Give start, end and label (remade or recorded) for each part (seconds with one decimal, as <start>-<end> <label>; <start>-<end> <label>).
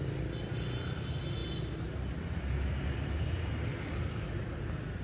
0.0-5.0 recorded